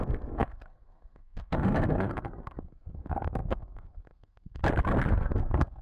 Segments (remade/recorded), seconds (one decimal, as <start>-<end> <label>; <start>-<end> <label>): 0.0-4.6 remade; 4.6-5.1 recorded; 5.1-5.8 remade